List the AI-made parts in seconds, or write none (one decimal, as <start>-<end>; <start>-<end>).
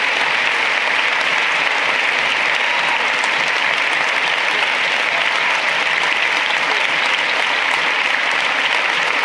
none